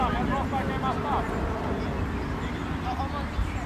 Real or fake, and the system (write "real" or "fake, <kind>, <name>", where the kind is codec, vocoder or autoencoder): real